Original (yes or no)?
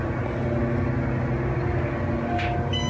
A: yes